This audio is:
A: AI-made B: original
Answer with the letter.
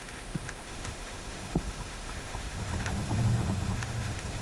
A